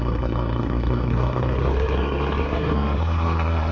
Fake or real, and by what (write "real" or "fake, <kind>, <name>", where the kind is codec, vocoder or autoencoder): fake, codec, SNAC